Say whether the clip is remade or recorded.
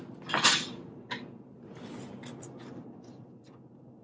recorded